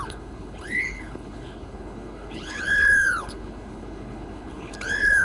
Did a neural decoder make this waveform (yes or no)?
yes